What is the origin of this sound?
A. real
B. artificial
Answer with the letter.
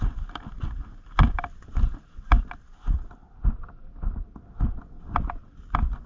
A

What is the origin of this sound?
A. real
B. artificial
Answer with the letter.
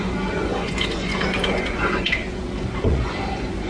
B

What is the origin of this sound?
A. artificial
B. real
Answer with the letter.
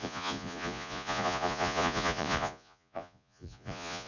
A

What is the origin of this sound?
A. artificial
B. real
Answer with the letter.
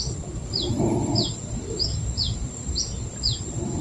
B